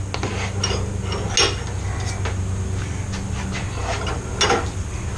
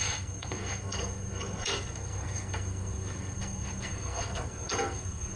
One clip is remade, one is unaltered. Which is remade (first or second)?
second